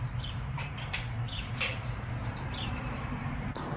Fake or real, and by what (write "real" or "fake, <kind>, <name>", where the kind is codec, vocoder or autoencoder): fake, vocoder, BigVGAN v2